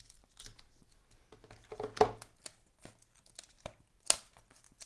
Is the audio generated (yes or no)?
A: no